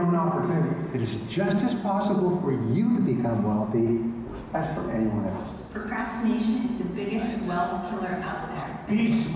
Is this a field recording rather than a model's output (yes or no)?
yes